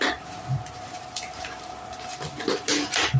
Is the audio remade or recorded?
recorded